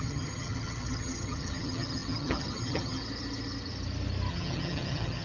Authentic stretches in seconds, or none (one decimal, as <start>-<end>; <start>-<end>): 3.0-4.3

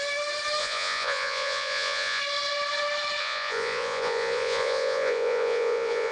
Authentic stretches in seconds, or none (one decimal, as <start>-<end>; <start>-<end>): 0.0-0.6; 2.2-3.2

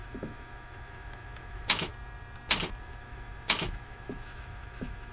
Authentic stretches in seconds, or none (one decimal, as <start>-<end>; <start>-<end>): 1.9-2.8